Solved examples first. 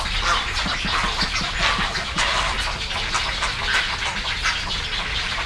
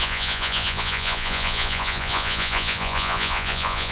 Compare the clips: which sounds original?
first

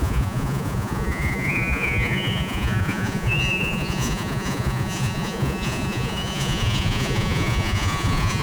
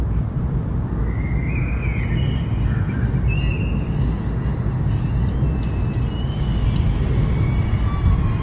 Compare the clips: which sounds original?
second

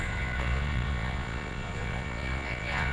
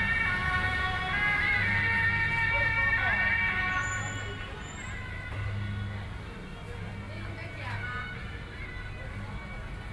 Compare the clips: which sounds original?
second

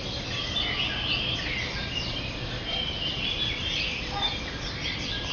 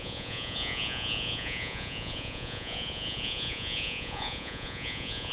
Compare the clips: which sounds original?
first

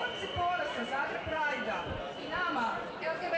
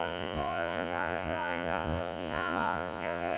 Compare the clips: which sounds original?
first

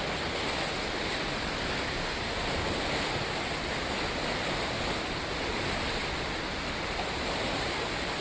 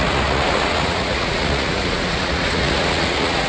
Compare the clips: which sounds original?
first